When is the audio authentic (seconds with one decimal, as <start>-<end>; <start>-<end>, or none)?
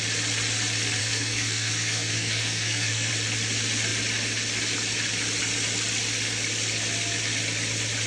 0.0-1.0; 3.1-8.1